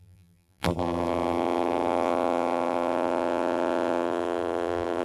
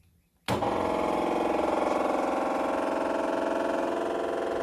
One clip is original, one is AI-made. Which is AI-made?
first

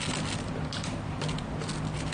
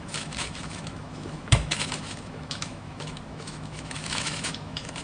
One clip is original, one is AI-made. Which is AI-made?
second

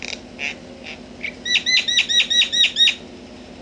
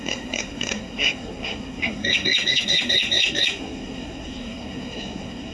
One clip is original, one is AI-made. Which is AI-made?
second